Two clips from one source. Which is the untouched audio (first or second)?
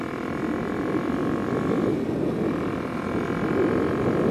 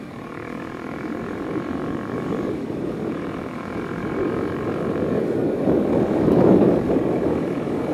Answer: first